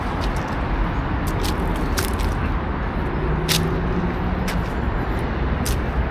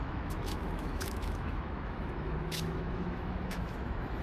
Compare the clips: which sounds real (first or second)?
first